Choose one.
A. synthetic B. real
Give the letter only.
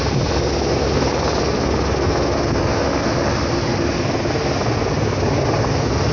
B